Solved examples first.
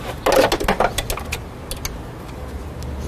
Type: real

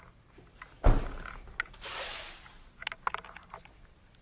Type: real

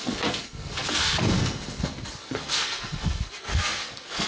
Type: fake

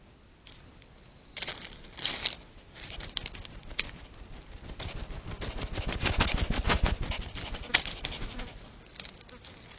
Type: real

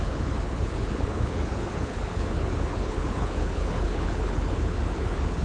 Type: fake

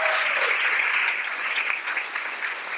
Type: fake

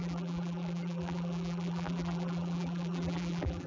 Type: fake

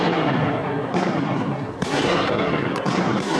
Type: fake